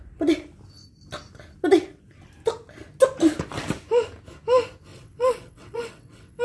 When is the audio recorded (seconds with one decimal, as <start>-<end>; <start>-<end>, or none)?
0.0-4.9